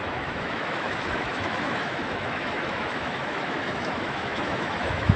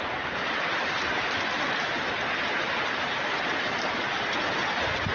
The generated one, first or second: first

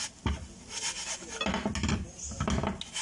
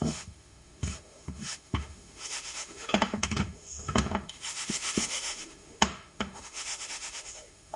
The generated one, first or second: second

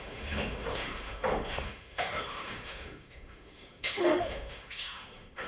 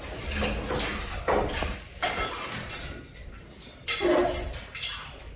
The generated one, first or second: first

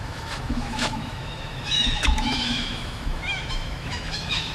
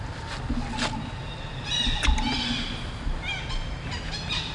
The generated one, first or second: first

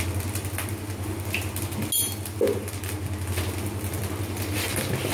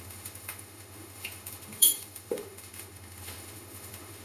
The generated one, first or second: second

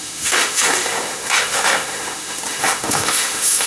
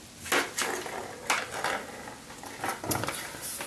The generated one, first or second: first